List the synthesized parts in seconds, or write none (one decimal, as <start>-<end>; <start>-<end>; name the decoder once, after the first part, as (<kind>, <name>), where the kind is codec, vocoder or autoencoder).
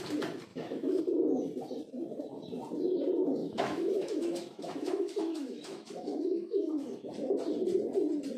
0.5-1.0 (autoencoder, DAC-VAE); 3.4-7.1